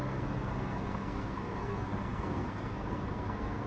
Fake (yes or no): yes